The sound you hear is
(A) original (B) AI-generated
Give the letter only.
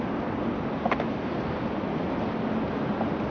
A